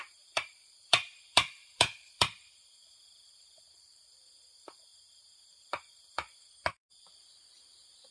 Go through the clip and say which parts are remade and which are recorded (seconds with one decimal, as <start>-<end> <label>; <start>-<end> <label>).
0.0-4.9 remade; 4.9-6.0 recorded; 6.0-8.1 remade